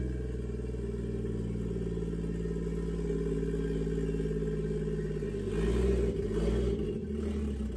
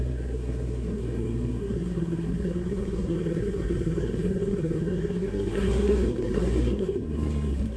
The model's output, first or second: second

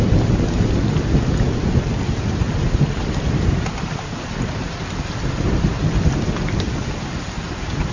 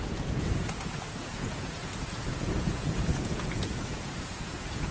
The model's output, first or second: second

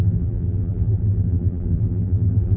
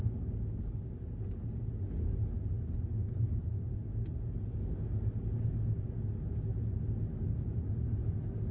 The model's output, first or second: first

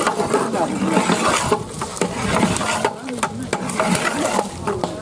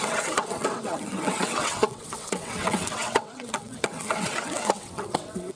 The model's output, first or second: second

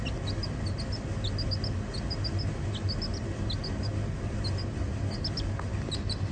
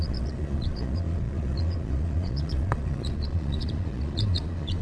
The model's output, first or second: second